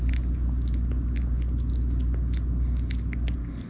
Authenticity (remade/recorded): recorded